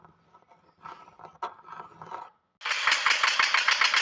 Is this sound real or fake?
real